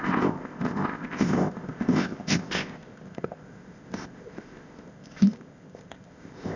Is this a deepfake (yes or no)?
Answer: yes